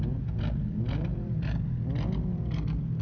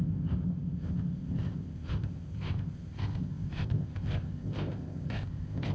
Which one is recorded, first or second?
first